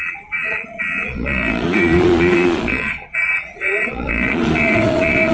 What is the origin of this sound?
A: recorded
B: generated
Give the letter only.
B